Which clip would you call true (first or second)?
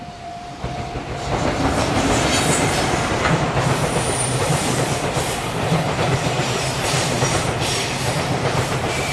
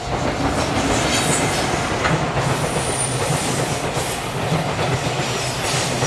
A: second